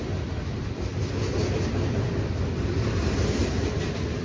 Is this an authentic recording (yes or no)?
yes